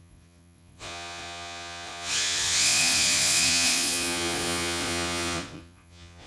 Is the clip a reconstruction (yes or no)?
yes